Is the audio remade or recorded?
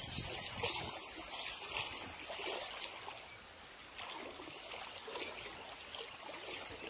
recorded